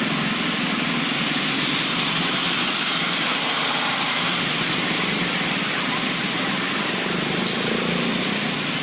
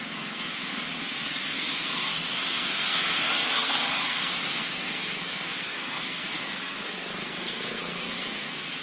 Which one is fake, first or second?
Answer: second